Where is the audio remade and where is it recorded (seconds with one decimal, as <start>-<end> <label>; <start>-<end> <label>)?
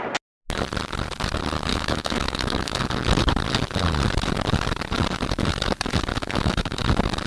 0.0-1.7 recorded; 1.7-2.8 remade; 2.8-6.1 recorded; 6.1-6.8 remade; 6.8-7.3 recorded